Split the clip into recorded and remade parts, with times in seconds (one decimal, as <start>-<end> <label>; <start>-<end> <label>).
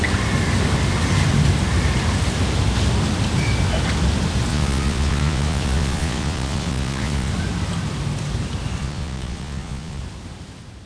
0.0-4.5 recorded; 4.5-7.3 remade; 7.3-8.8 recorded; 8.8-10.0 remade; 10.0-10.9 recorded